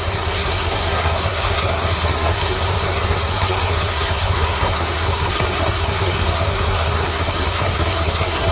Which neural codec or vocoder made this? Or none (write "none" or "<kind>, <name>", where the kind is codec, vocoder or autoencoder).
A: codec, SNAC